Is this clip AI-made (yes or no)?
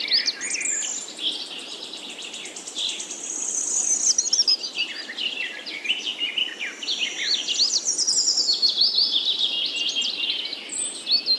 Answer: no